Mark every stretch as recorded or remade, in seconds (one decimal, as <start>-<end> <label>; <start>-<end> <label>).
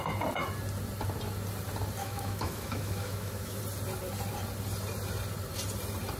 0.0-2.0 recorded; 2.0-3.6 remade; 3.6-6.2 recorded